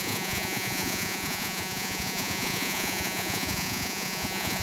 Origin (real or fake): fake